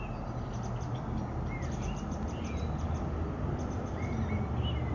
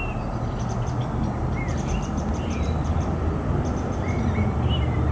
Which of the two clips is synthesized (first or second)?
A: second